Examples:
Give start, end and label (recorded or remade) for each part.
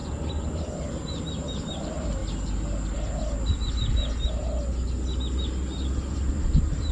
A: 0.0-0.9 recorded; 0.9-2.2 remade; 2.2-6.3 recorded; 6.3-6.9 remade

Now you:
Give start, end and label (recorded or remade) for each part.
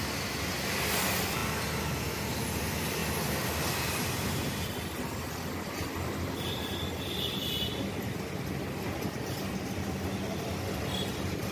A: 0.0-3.0 recorded; 3.0-4.7 remade; 4.7-11.5 recorded